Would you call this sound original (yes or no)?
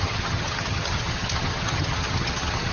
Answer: no